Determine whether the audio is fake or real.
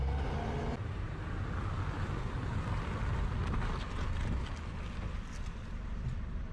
real